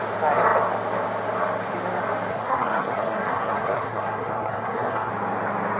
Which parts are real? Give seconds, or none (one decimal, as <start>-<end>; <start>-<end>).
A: 0.0-2.3; 5.1-5.8